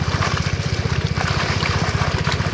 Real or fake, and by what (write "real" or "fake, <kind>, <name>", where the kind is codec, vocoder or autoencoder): real